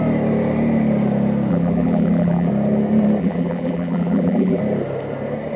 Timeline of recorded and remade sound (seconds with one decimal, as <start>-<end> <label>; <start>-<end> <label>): 0.0-1.5 recorded; 1.5-2.5 remade; 2.5-3.2 recorded; 3.2-4.6 remade; 4.6-5.6 recorded